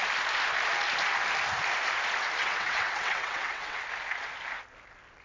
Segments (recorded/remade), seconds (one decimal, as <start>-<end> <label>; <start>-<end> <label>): 0.0-2.4 recorded; 2.4-3.8 remade; 3.8-5.2 recorded